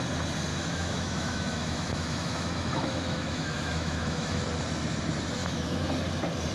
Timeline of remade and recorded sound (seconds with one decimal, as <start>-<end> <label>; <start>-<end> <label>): 0.0-0.5 recorded; 0.5-4.4 remade; 4.4-5.4 recorded; 5.4-5.9 remade; 5.9-6.5 recorded